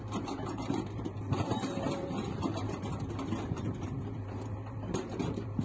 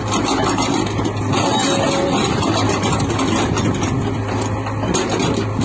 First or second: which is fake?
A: first